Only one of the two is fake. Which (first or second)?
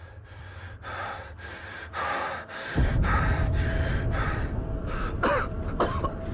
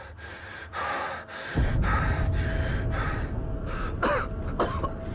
first